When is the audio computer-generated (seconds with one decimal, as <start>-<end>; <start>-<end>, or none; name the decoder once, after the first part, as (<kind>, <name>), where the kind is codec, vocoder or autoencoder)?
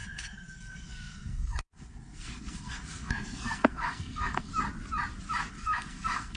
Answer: 0.0-4.5 (codec, SNAC); 5.5-6.4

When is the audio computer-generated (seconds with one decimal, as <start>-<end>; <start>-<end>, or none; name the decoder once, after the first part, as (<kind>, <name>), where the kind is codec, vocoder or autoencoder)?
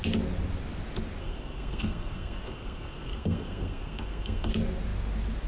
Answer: 1.2-4.5 (codec, SNAC)